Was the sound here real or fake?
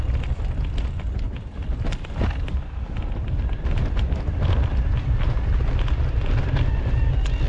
real